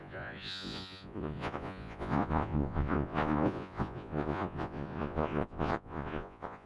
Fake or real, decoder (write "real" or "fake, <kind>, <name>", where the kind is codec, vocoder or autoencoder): fake, vocoder, Vocos